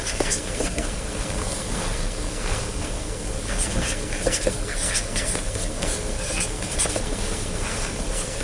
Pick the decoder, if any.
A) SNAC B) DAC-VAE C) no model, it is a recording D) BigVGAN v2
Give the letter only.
A